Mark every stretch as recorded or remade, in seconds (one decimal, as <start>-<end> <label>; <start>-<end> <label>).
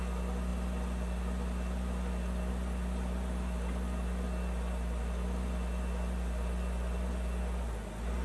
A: 0.0-8.2 recorded